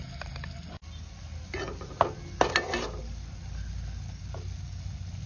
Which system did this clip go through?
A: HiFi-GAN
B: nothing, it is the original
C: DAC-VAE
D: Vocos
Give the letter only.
B